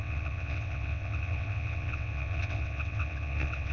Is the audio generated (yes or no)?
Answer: yes